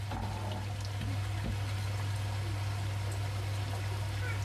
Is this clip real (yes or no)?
yes